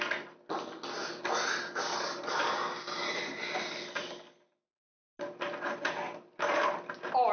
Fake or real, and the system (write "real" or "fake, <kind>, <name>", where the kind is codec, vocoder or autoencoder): real